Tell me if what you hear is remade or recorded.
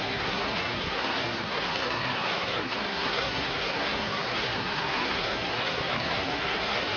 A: remade